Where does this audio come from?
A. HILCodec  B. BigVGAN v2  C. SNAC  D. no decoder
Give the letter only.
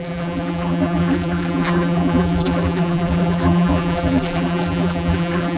B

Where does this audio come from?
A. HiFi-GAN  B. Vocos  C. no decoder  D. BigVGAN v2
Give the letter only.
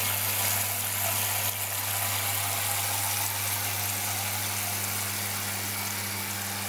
C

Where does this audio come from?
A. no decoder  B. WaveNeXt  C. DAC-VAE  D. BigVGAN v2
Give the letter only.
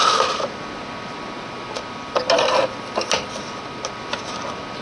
A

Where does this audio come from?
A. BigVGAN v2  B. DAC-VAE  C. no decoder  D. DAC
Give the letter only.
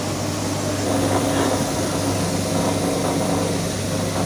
C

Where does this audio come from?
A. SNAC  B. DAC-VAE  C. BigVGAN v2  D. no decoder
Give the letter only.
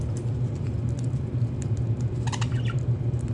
C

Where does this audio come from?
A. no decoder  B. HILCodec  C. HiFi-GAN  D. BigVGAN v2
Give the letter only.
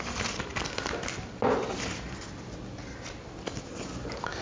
A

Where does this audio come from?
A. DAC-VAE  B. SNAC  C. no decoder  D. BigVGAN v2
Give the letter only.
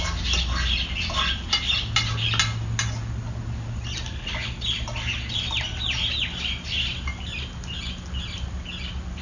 C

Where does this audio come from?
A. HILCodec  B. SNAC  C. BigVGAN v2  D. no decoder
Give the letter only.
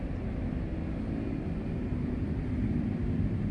D